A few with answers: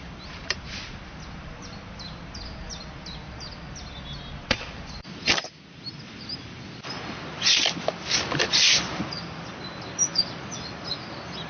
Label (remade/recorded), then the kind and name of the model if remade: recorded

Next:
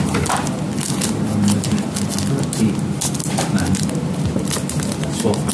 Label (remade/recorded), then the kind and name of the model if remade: recorded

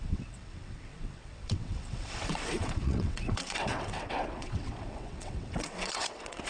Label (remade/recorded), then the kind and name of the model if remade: remade, vocoder, WaveNeXt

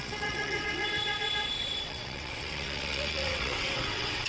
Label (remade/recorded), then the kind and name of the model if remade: remade, vocoder, WaveNeXt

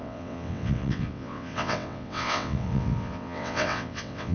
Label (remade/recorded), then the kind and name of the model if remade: remade, vocoder, WaveNeXt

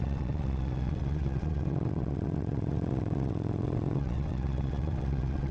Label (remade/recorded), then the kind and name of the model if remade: remade, vocoder, WaveNeXt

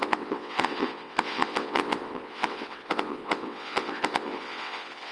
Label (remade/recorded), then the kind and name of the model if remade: remade, vocoder, WaveNeXt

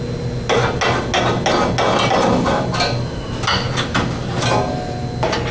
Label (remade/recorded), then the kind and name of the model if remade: recorded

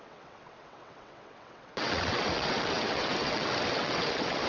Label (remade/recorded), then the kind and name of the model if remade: remade, vocoder, WaveNeXt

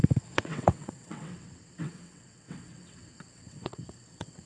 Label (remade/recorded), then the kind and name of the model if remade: remade, vocoder, WaveNeXt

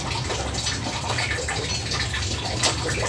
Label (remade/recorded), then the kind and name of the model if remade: recorded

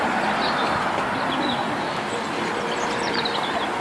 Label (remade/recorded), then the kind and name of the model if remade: recorded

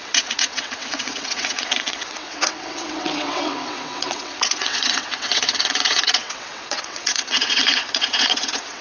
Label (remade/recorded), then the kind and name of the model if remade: remade, vocoder, WaveNeXt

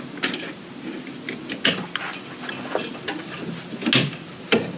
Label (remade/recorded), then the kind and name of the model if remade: recorded